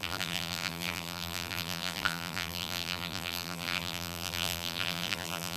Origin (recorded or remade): remade